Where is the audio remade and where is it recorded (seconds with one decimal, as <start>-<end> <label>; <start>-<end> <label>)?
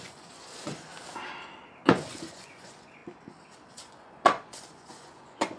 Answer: 0.0-0.9 remade; 0.9-1.9 recorded; 1.9-3.0 remade; 3.0-3.7 recorded; 3.7-5.6 remade